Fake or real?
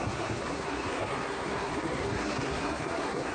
fake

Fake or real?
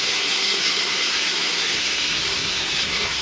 fake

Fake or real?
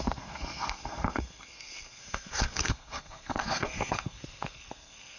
fake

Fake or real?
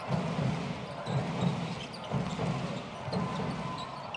real